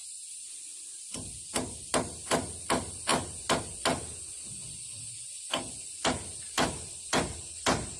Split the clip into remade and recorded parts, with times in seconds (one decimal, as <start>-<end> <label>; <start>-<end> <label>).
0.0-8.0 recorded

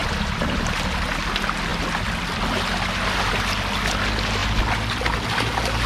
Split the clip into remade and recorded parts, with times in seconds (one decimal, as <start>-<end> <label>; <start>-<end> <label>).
0.0-0.6 remade; 0.6-5.9 recorded

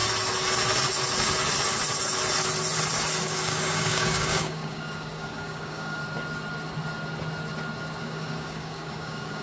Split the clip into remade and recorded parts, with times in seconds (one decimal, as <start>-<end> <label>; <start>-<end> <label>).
0.0-3.2 recorded; 3.2-6.0 remade; 6.0-8.0 recorded; 8.0-9.4 remade

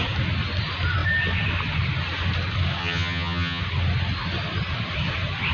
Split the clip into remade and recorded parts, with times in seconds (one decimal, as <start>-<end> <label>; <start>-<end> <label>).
0.0-2.8 recorded; 2.8-3.6 remade; 3.6-5.5 recorded

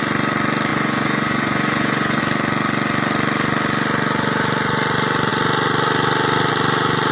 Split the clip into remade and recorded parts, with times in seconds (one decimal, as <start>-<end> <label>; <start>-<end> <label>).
0.0-0.7 recorded; 0.7-2.2 remade; 2.2-7.1 recorded